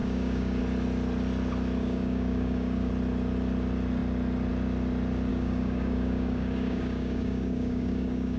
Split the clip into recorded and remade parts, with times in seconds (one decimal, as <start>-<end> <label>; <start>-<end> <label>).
0.0-0.6 remade; 0.6-1.8 recorded; 1.8-2.9 remade; 2.9-5.3 recorded; 5.3-8.4 remade